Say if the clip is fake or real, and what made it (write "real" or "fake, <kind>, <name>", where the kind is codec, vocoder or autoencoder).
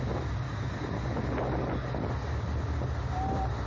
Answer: real